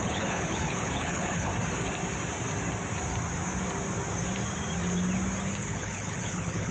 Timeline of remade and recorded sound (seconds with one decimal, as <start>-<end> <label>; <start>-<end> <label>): 0.0-1.5 remade; 1.5-5.5 recorded; 5.5-6.7 remade